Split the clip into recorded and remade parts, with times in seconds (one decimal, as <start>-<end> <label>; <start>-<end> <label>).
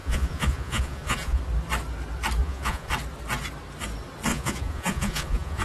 0.0-1.4 remade; 1.4-2.4 recorded; 2.4-2.9 remade; 2.9-4.3 recorded; 4.3-5.6 remade